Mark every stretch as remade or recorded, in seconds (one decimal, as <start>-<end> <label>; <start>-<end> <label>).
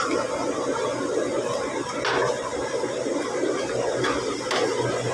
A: 0.0-5.1 recorded